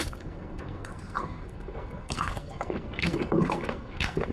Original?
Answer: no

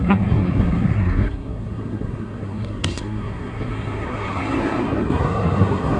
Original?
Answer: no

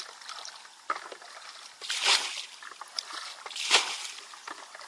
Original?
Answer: yes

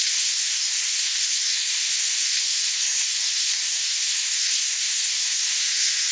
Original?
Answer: no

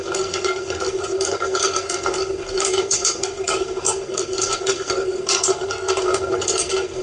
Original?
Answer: no